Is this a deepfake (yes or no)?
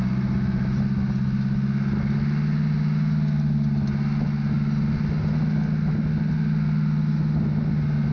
no